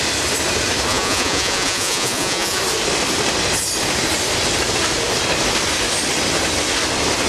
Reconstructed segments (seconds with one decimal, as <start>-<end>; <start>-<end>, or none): 0.9-2.6